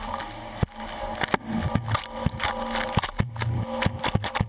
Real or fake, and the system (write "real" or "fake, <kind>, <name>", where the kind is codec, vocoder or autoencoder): real